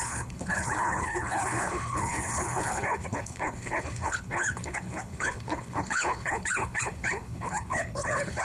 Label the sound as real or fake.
fake